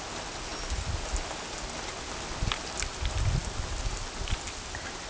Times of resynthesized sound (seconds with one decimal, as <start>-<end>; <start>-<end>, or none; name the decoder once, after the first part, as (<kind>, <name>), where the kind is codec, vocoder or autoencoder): none